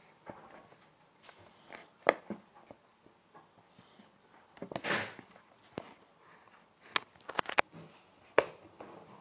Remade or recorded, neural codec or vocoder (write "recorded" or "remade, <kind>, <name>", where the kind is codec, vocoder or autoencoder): recorded